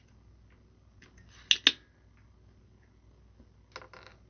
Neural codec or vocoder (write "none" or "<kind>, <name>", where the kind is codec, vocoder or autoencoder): none